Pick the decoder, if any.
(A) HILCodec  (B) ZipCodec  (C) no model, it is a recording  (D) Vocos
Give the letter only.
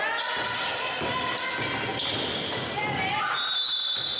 C